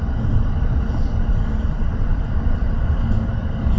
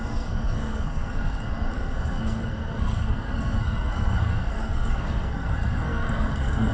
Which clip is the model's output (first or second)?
second